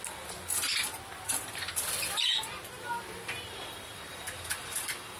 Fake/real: real